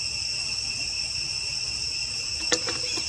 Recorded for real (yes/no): yes